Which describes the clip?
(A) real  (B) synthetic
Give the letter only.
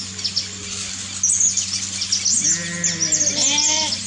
A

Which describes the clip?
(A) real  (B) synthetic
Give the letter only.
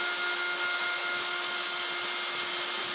A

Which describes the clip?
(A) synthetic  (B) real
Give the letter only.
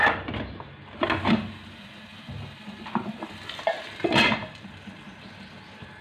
B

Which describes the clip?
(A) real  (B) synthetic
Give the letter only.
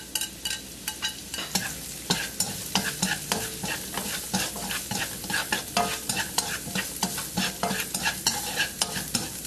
A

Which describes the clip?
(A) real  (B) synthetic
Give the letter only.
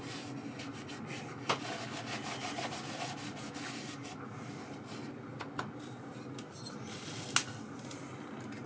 A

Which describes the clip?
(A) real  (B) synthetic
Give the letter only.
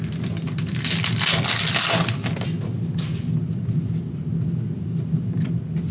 A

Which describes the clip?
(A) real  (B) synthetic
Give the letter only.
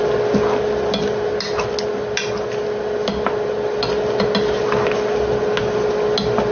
A